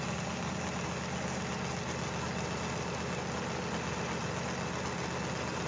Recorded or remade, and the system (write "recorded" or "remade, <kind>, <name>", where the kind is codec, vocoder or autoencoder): recorded